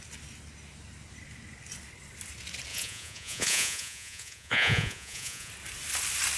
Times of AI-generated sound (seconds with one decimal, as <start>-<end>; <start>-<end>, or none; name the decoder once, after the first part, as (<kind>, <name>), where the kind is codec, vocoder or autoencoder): 2.7-5.5 (vocoder, Vocos)